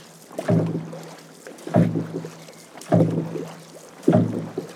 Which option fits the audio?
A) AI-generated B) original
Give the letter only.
B